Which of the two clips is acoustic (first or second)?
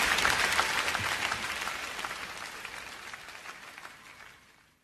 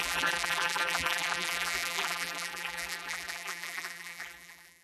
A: first